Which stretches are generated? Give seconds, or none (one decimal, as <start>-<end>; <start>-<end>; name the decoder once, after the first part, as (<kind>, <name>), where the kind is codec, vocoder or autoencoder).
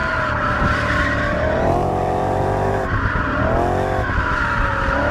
0.0-3.1 (vocoder, BigVGAN v2)